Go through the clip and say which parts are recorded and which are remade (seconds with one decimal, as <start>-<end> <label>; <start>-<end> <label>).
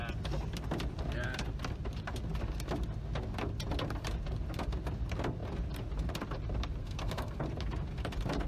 0.0-6.8 recorded; 6.8-7.4 remade; 7.4-8.5 recorded